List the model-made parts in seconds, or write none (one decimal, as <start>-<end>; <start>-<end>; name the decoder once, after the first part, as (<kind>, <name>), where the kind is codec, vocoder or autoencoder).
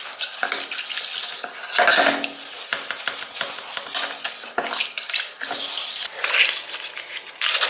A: none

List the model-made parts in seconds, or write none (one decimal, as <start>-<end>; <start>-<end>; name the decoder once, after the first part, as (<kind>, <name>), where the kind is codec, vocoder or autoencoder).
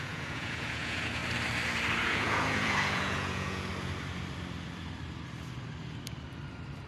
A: 0.0-1.2 (vocoder, Vocos); 2.0-3.7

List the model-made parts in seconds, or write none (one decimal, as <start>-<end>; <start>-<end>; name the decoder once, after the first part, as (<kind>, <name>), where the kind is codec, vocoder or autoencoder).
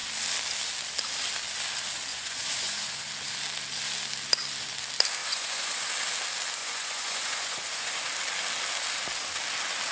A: 2.1-3.1 (vocoder, Vocos); 5.2-5.9; 6.6-8.0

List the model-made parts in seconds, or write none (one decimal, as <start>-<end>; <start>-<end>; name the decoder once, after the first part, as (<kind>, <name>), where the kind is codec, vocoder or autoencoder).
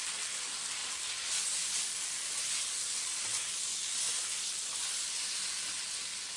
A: none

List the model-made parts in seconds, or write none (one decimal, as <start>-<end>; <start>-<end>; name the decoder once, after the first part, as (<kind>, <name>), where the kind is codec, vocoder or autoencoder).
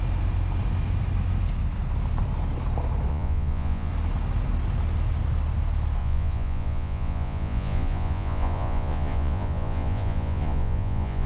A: 3.1-3.9 (vocoder, Vocos); 6.0-11.3